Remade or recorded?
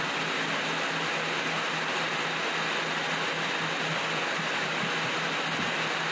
recorded